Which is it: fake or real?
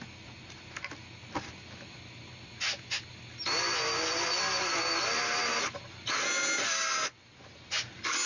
real